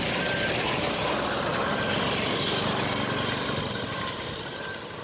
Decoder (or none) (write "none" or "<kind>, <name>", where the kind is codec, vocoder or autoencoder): none